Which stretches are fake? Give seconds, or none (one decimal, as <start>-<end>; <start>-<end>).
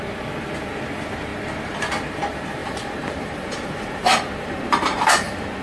1.3-1.9; 2.6-5.6